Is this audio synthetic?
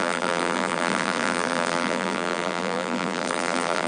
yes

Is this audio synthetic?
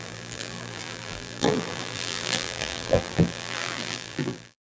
yes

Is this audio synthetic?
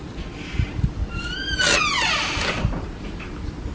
no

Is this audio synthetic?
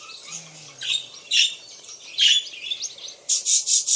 yes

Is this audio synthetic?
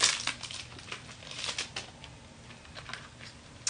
no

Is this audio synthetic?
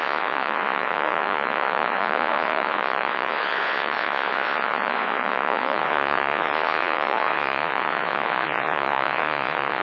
yes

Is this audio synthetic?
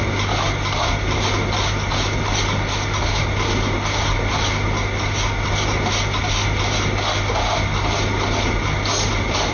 no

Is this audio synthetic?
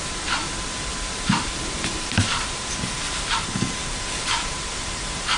yes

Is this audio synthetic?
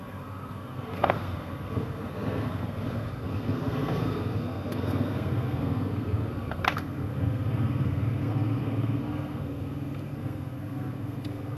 yes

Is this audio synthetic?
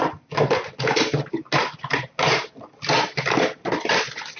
no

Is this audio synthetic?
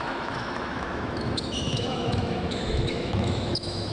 yes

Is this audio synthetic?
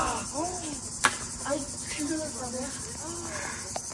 no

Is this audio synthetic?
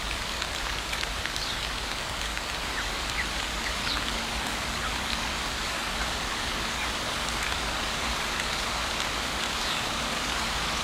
yes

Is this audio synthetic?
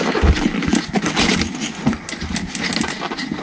no